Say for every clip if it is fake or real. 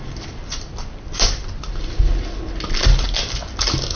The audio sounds real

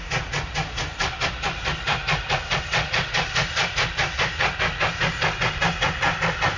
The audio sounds real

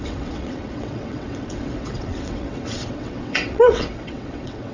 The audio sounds fake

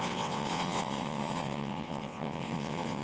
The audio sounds fake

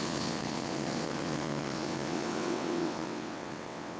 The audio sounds fake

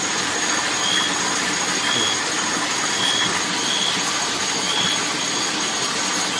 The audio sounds real